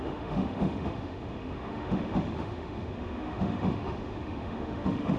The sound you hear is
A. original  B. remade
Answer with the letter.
B